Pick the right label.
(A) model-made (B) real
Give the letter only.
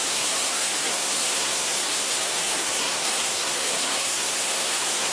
A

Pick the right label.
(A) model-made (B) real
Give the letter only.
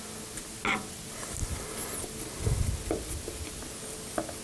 B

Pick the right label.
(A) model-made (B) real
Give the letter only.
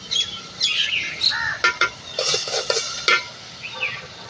B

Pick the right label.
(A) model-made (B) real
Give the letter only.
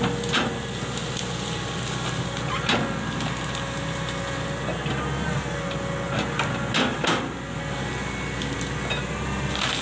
B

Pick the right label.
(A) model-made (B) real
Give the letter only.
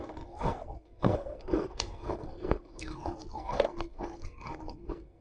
A